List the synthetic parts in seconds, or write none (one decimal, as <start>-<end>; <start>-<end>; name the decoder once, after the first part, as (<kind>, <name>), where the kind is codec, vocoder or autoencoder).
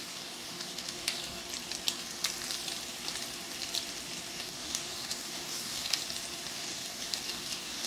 0.0-1.4 (codec, DAC); 4.3-6.0; 6.5-7.9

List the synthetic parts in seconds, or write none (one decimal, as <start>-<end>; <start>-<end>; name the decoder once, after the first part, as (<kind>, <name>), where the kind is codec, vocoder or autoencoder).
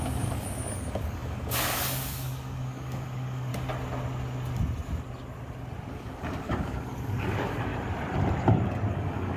0.0-3.5 (codec, DAC); 5.9-7.7; 8.9-9.4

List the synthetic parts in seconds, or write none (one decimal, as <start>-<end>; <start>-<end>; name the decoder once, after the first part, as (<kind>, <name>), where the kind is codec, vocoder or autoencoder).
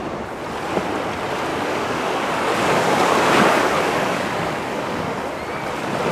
1.5-5.2 (codec, DAC)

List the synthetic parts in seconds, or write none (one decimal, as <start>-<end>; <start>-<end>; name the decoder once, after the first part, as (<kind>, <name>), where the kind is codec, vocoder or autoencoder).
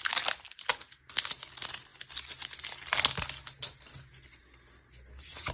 none